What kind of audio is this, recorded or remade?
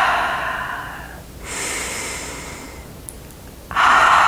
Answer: recorded